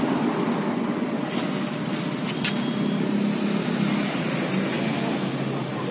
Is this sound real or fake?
real